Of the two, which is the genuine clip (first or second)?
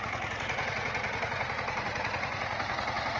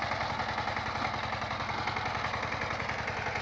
second